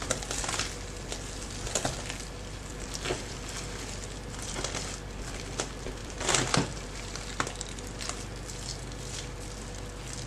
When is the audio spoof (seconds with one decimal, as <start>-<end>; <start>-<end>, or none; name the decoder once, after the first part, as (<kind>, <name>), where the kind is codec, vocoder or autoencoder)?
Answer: 6.0-7.0 (vocoder, BigVGAN v2)